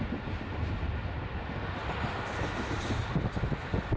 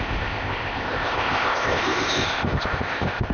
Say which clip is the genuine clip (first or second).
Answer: first